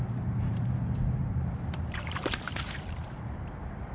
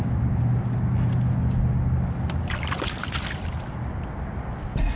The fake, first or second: first